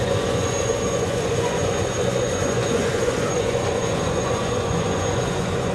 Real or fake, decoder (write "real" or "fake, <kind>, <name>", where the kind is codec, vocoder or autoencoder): fake, vocoder, Vocos